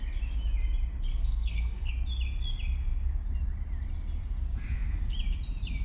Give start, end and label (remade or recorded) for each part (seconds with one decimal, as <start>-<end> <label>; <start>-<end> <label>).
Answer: 0.0-1.1 recorded; 1.1-1.9 remade; 1.9-5.8 recorded